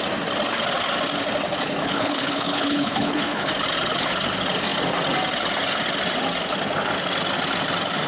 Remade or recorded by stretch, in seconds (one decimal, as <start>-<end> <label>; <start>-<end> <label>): 0.0-1.8 recorded; 1.8-3.5 remade; 3.5-8.1 recorded

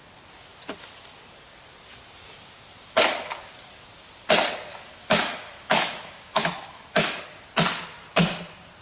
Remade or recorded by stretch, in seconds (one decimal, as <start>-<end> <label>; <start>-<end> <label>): 0.0-4.7 recorded; 4.7-7.2 remade; 7.2-8.8 recorded

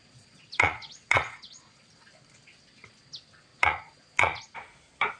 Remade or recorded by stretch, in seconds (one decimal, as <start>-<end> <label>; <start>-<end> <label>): 0.0-1.9 remade; 1.9-3.5 recorded; 3.5-4.4 remade; 4.4-5.2 recorded

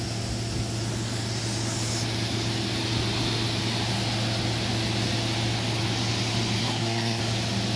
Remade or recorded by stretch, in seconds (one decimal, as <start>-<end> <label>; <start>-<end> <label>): 0.0-6.6 recorded; 6.6-7.2 remade; 7.2-7.8 recorded

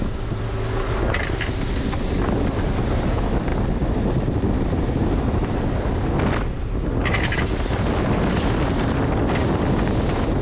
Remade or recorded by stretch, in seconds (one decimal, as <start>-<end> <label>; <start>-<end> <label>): 0.0-10.4 recorded

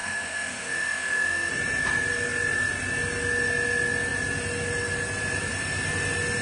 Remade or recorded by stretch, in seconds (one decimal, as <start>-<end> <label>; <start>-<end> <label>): 0.0-1.5 remade; 1.5-6.4 recorded

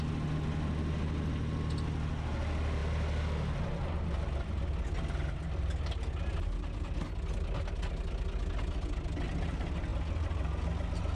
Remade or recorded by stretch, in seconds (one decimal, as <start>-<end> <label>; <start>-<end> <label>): 0.0-11.2 recorded